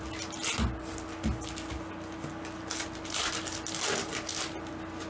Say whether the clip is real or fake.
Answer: real